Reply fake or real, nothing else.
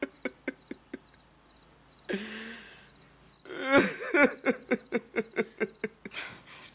real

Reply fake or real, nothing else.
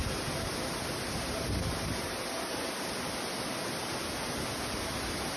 real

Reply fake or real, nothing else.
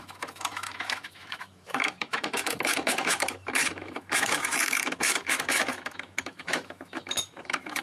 fake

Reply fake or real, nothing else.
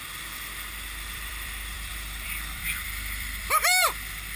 fake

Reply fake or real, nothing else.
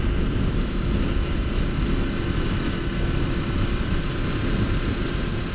real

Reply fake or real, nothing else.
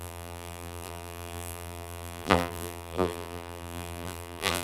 fake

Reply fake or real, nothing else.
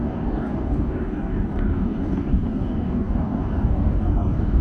fake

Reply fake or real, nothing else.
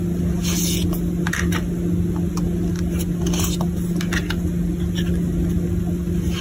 real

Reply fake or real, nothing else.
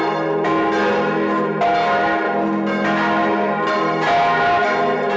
real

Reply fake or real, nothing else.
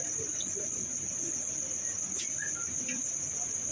real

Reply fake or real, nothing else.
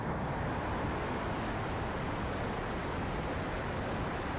real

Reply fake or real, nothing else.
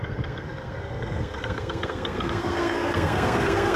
fake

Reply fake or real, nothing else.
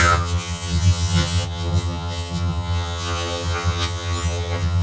fake